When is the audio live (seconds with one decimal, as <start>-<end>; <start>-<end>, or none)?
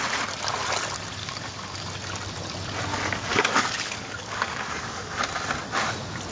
0.0-1.2; 1.9-2.9; 5.2-6.3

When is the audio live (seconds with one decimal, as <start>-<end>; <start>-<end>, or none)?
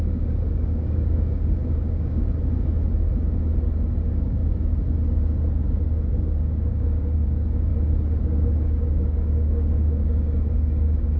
2.2-4.0; 4.4-6.1; 7.7-8.2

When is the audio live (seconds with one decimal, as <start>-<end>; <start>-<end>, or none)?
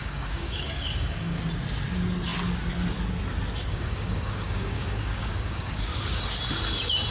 1.4-3.7; 6.2-7.1